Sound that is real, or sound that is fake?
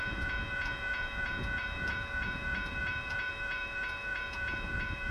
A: fake